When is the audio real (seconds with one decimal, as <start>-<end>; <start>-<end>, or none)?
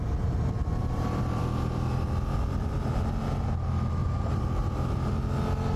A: 0.0-0.8; 1.4-4.0; 5.1-5.8